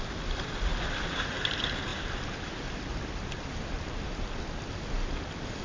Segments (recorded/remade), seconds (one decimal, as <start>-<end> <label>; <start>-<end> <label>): 0.0-5.6 remade